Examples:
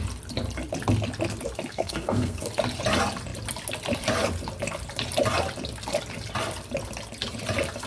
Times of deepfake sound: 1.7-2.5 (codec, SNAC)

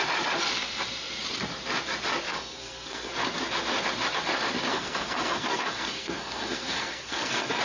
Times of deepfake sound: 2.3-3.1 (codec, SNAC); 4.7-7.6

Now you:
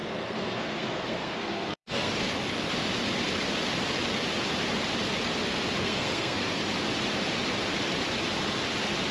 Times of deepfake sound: 0.0-2.1 (codec, SNAC); 5.8-6.6